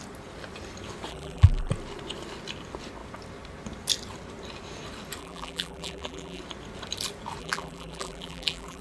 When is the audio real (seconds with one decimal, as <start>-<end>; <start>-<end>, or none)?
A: 0.0-1.1; 1.7-5.2; 6.4-7.4